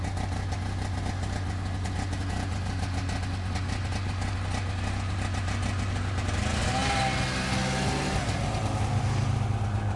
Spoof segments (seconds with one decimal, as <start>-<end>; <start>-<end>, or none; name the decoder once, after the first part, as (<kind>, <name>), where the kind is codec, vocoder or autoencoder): none